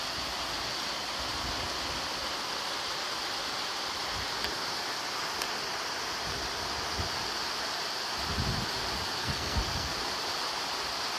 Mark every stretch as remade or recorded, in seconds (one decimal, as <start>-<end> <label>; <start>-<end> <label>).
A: 0.0-9.2 recorded; 9.2-9.9 remade; 9.9-11.2 recorded